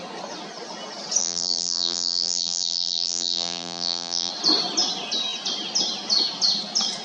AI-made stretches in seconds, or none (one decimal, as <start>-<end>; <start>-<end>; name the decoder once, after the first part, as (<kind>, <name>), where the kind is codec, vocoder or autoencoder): 1.2-4.3 (vocoder, BigVGAN v2)